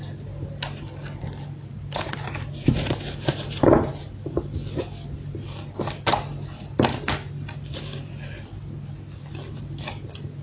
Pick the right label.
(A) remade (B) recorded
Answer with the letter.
B